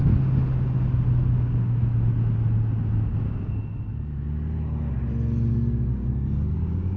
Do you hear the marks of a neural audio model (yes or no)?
no